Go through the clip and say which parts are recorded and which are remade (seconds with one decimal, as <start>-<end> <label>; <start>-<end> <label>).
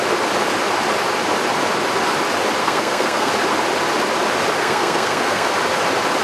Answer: 0.0-2.6 recorded; 2.6-3.3 remade; 3.3-4.6 recorded; 4.6-5.5 remade; 5.5-6.2 recorded